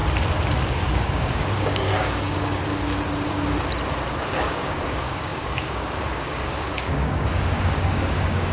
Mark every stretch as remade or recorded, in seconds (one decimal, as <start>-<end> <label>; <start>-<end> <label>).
0.0-0.6 recorded; 0.6-2.6 remade; 2.6-4.2 recorded; 4.2-8.5 remade